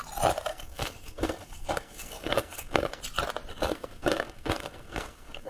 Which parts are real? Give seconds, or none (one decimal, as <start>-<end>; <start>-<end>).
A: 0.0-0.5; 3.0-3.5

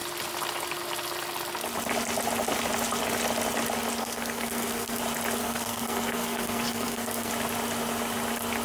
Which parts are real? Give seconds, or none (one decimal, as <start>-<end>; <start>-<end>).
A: 0.0-4.0; 5.0-5.4; 7.3-8.6

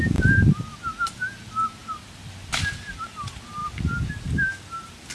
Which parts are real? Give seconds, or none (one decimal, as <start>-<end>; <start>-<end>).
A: 0.0-5.1

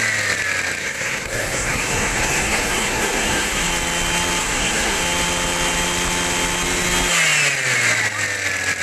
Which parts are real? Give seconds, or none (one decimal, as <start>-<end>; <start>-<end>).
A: 0.0-0.8; 3.7-4.4; 5.0-8.8

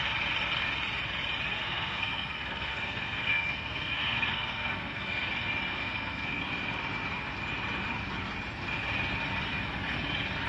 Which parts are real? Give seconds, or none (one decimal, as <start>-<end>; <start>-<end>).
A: 0.0-1.5; 5.3-5.7; 6.4-10.5

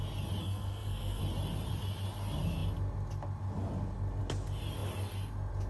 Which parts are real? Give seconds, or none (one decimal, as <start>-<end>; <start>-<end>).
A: 0.0-0.4; 1.2-5.7

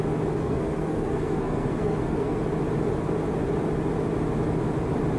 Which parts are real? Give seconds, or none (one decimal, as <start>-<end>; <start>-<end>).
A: 0.0-0.4; 2.4-5.2

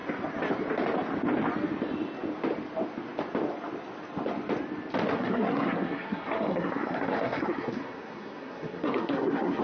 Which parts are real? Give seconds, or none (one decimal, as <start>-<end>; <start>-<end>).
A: 0.0-5.1